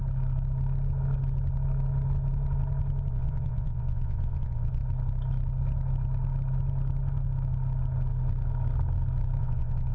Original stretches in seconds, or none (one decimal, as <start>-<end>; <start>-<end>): 0.0-3.1; 4.8-9.4